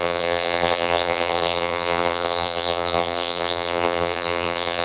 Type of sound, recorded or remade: remade